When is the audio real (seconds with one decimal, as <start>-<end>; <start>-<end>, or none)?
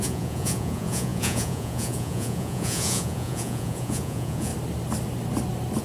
4.5-5.8